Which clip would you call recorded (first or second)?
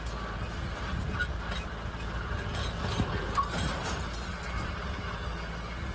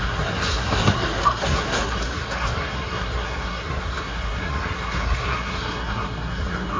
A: first